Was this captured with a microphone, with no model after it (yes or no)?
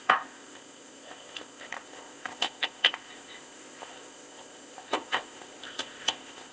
no